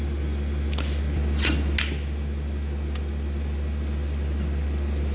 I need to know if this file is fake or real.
real